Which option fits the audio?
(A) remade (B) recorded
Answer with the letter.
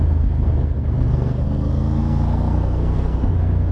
A